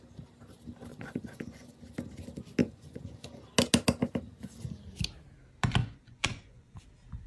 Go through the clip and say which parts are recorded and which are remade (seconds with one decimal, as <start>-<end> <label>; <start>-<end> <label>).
0.0-0.9 recorded; 0.9-1.8 remade; 1.8-2.6 recorded; 2.6-3.4 remade; 3.4-5.8 recorded; 5.8-6.8 remade; 6.8-7.3 recorded